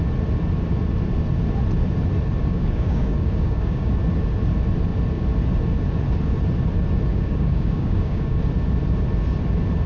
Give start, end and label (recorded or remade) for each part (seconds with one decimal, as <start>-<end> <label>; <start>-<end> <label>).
0.0-2.4 recorded; 2.4-3.9 remade; 3.9-7.1 recorded; 7.1-8.4 remade; 8.4-9.9 recorded